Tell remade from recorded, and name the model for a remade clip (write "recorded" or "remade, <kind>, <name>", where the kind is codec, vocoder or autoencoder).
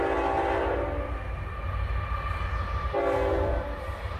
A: recorded